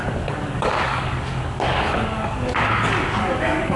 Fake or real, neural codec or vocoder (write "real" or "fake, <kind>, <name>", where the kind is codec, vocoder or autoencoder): fake, codec, DAC